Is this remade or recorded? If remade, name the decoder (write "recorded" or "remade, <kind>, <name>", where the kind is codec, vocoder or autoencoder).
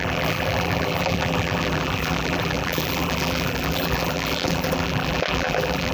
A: remade, vocoder, BigVGAN v2